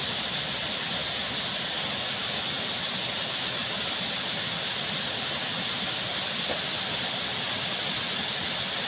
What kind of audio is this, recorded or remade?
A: recorded